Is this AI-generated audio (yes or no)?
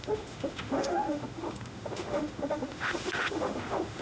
yes